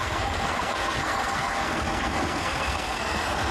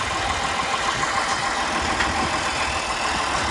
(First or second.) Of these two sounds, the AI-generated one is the first